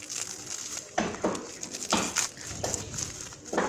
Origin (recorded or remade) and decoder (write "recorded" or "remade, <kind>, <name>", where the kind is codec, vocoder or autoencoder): recorded